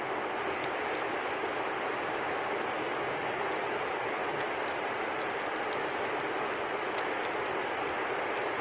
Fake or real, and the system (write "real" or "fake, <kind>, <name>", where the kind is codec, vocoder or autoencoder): real